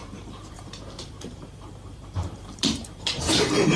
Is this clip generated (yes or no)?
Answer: yes